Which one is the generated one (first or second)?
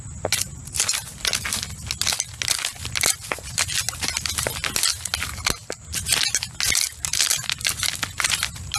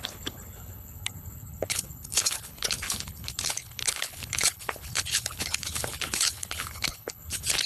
second